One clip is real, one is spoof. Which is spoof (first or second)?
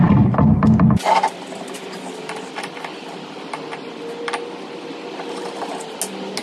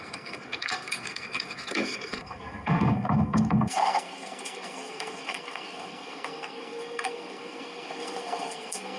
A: second